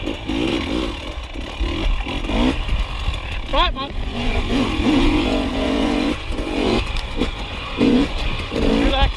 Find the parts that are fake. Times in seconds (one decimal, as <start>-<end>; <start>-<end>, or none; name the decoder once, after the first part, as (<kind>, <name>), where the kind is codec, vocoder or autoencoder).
3.5-8.7 (vocoder, Vocos)

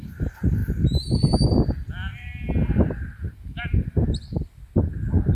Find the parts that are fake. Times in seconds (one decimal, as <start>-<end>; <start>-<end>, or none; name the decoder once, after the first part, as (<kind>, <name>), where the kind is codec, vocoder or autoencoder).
none

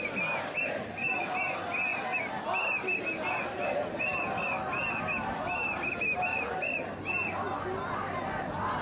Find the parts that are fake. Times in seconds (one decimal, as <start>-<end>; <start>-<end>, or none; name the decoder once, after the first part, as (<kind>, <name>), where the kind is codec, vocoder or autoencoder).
6.3-7.0 (vocoder, BigVGAN v2)

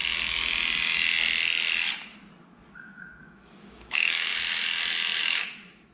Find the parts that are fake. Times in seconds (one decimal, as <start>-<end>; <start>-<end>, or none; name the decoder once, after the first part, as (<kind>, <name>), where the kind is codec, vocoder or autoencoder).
2.4-4.3 (autoencoder, DAC-VAE); 5.2-5.9

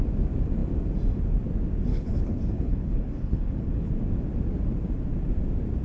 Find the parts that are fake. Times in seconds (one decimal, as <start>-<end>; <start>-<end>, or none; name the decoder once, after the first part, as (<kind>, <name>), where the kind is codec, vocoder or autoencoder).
1.9-3.9 (codec, HILCodec)

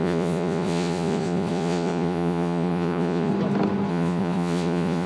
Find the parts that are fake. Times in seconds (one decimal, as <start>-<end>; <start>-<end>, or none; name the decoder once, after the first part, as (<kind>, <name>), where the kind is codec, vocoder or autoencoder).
0.0-3.3 (vocoder, Vocos); 3.9-5.1

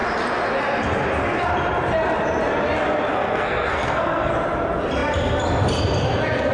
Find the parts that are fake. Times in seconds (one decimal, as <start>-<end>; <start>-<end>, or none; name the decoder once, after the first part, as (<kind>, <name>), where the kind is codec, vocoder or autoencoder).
3.1-4.3 (codec, SNAC)

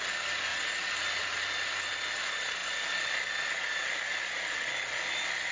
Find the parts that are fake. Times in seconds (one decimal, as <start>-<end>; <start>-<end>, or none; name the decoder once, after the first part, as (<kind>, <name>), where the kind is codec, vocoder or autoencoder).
none